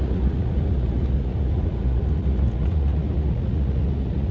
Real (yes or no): no